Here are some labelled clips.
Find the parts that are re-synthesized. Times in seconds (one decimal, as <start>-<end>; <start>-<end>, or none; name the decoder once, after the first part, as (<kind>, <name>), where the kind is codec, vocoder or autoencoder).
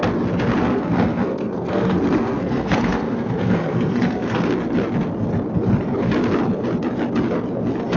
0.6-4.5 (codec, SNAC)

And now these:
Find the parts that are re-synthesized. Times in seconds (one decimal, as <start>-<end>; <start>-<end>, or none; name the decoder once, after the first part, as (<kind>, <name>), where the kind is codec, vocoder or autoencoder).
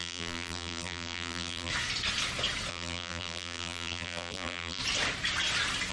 0.0-1.7 (vocoder, BigVGAN v2); 2.7-4.8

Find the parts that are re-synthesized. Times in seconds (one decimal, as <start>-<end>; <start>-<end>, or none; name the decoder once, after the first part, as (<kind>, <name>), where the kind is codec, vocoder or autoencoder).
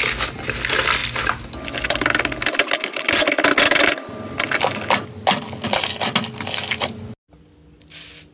none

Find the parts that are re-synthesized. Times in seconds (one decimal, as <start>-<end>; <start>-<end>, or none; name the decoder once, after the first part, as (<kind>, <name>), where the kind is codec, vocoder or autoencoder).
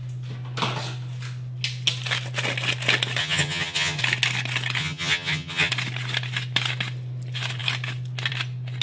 3.2-4.0 (vocoder, HiFi-GAN); 4.8-5.7